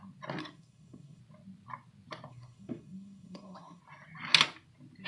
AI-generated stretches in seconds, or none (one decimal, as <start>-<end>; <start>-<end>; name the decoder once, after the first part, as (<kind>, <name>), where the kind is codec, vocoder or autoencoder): 0.4-1.2 (codec, SNAC); 2.3-3.8